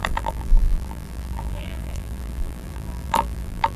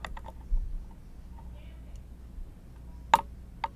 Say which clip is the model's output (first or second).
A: first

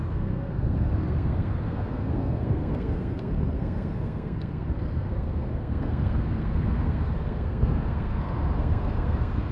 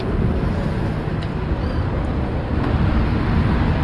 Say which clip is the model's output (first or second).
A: first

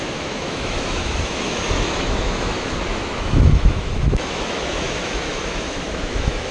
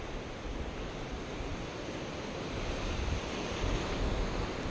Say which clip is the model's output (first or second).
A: first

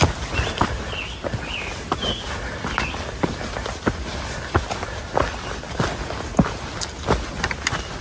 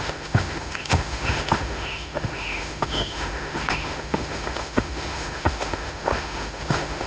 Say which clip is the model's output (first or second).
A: second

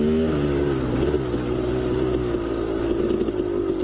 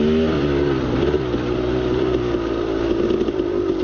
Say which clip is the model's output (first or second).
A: second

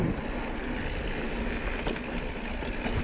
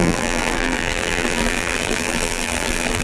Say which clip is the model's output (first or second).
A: second